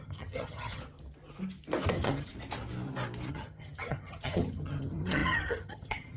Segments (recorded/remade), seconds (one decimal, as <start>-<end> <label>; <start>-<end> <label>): 0.0-0.8 remade; 0.8-1.9 recorded; 1.9-2.3 remade; 2.3-3.3 recorded; 3.3-6.2 remade